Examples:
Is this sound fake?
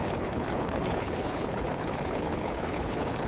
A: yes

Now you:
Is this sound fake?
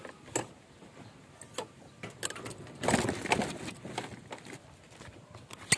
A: no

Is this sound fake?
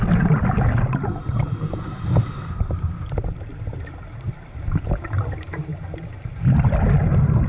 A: no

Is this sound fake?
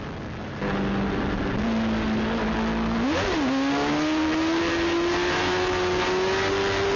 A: no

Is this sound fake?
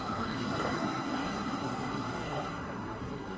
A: yes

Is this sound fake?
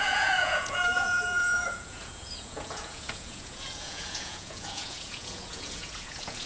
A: yes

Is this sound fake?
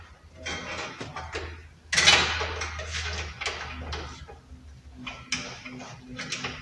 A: no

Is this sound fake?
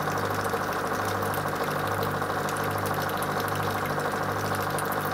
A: no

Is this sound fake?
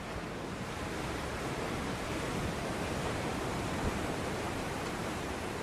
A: yes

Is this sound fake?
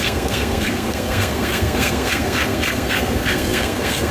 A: yes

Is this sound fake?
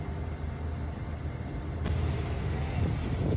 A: no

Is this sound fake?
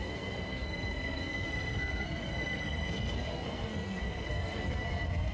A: yes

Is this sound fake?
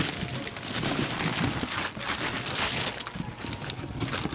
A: no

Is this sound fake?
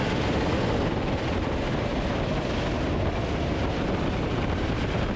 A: no